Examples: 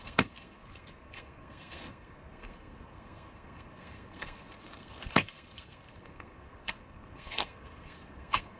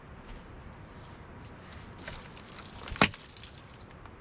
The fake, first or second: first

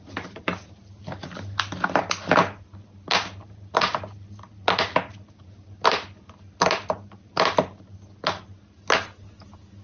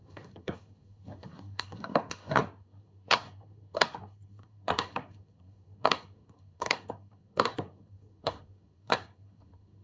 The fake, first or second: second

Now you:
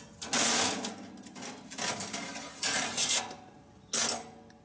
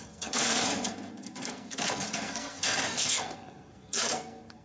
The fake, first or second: second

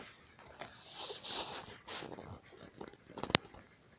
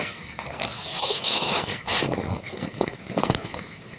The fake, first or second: second